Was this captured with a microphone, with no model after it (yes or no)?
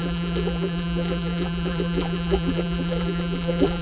no